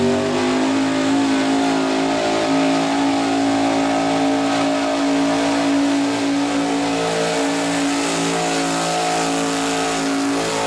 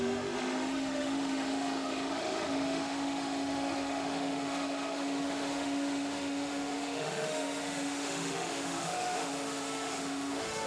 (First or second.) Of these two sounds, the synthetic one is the second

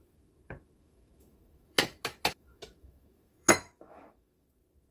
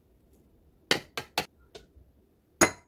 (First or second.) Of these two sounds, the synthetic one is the first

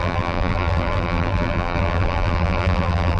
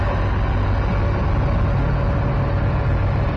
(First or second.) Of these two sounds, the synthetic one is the first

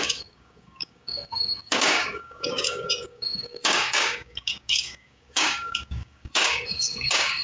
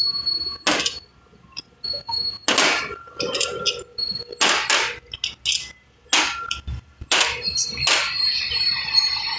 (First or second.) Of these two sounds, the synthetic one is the first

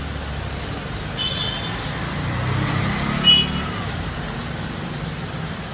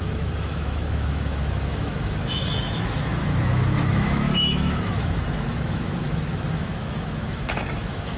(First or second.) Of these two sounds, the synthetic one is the second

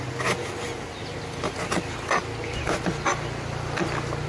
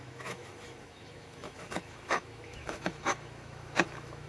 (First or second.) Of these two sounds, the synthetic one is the second